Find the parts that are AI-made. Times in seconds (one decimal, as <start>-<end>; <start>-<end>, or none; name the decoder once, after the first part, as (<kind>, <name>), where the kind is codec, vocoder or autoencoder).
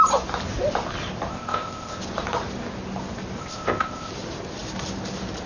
1.3-2.0 (codec, ZipCodec); 3.4-4.1